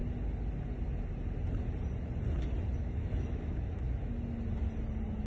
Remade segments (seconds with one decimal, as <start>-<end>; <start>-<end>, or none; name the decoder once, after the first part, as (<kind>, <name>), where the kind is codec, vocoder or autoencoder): 2.8-4.1 (autoencoder, DAC-VAE)